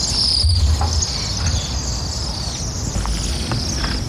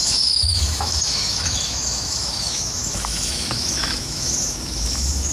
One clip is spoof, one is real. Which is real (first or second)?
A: first